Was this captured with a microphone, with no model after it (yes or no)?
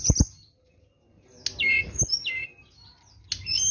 yes